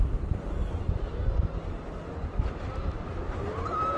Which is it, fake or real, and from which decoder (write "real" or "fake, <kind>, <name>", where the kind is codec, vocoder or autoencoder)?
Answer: real